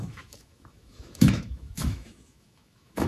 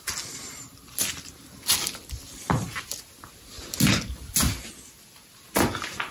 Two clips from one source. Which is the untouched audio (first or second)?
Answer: second